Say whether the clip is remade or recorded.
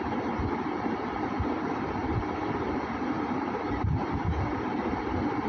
remade